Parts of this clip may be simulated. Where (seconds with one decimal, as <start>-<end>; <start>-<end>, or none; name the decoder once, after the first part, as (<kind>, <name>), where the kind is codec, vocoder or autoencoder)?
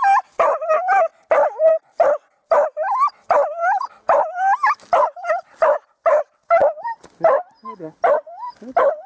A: none